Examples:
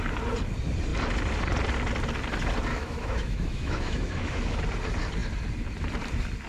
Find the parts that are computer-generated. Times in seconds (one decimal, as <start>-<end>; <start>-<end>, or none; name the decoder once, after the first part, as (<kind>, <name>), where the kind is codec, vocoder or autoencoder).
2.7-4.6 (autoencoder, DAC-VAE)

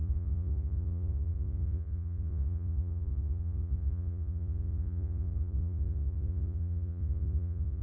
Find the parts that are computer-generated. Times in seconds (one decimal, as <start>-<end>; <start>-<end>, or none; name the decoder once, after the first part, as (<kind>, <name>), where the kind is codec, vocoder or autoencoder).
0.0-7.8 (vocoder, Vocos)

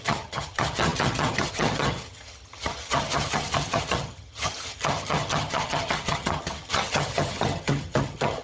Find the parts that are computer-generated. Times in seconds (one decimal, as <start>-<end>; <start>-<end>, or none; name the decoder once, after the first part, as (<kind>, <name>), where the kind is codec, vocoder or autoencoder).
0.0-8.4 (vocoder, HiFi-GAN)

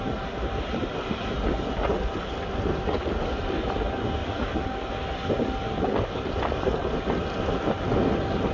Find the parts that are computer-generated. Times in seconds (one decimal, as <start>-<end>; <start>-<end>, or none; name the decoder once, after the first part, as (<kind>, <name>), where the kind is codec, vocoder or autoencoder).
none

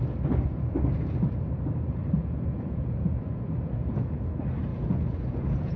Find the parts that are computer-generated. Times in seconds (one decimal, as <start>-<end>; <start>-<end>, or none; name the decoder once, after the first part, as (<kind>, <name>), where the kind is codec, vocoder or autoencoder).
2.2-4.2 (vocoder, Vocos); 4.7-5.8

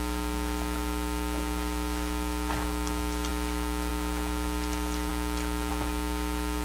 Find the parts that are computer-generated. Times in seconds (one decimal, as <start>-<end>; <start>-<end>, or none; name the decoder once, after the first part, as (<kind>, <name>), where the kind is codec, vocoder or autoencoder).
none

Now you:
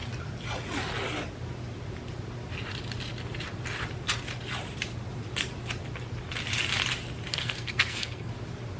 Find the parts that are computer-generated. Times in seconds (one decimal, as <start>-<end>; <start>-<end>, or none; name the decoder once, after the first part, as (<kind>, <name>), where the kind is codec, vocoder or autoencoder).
7.3-8.3 (codec, SNAC)